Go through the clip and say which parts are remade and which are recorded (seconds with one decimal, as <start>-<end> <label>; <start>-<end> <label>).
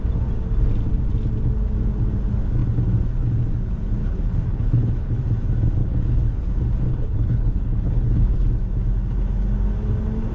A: 0.0-4.0 recorded; 4.0-5.2 remade; 5.2-5.8 recorded; 5.8-6.5 remade; 6.5-6.9 recorded; 6.9-8.3 remade; 8.3-10.3 recorded